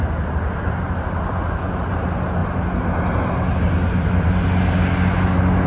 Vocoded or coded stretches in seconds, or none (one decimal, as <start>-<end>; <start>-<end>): none